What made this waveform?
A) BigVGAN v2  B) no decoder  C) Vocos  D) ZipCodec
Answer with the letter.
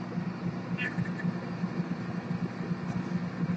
B